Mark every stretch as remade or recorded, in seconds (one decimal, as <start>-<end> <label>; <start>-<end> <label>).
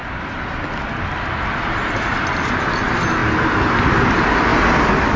0.0-5.2 recorded